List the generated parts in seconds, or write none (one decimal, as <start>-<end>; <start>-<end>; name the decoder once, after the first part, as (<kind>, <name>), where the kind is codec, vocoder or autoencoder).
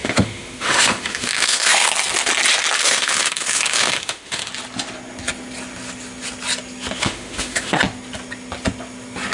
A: 0.0-1.9 (autoencoder, DAC-VAE); 2.8-4.5; 7.0-7.8